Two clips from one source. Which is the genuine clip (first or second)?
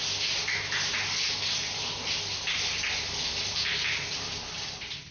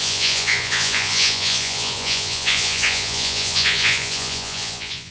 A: first